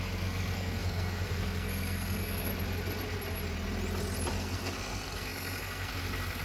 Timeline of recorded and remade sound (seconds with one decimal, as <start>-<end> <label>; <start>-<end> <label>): 0.0-2.5 remade; 2.5-4.3 recorded; 4.3-6.4 remade